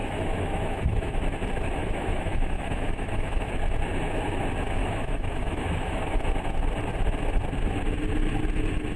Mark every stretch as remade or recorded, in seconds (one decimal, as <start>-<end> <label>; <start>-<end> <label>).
0.0-1.2 remade; 1.2-1.8 recorded; 1.8-3.5 remade; 3.5-4.8 recorded; 4.8-6.2 remade; 6.2-9.0 recorded